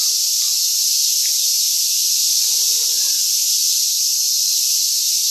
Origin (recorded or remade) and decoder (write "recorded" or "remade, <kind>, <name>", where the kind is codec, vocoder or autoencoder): recorded